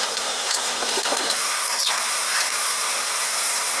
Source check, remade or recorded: remade